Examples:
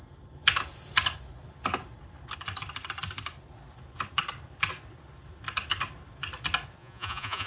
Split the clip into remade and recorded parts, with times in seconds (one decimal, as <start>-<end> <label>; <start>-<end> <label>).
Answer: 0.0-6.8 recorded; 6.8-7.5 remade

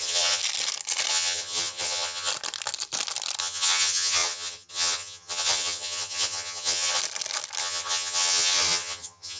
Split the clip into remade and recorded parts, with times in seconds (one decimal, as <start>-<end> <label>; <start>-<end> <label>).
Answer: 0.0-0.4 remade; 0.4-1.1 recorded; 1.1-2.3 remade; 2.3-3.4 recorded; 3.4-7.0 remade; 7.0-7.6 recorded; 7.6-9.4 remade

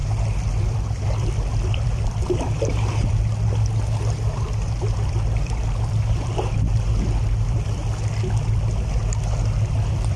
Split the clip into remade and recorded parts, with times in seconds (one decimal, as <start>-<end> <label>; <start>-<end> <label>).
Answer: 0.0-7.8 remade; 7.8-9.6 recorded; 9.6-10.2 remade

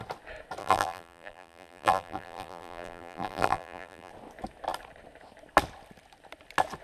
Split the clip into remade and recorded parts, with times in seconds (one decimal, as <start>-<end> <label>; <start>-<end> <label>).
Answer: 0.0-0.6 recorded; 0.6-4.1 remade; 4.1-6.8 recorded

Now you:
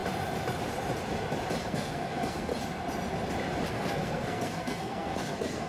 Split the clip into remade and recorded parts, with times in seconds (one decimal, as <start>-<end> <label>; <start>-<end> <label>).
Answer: 0.0-1.6 recorded; 1.6-2.5 remade; 2.5-3.7 recorded; 3.7-5.7 remade

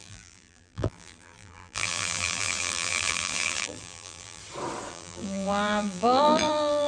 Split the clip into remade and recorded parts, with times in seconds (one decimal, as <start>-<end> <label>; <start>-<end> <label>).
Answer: 0.0-4.4 remade; 4.4-4.9 recorded; 4.9-6.9 remade

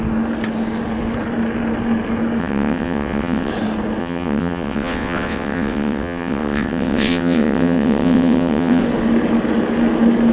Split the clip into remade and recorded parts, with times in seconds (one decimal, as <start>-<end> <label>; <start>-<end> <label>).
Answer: 0.0-2.4 recorded; 2.4-3.5 remade; 3.5-4.0 recorded; 4.0-8.8 remade; 8.8-10.3 recorded